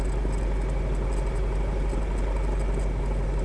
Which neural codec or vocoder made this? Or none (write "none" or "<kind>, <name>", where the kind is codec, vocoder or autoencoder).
none